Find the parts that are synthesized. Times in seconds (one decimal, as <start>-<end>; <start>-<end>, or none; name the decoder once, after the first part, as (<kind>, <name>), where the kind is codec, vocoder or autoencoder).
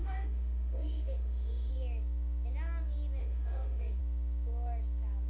0.0-1.7 (autoencoder, DAC-VAE); 3.2-4.0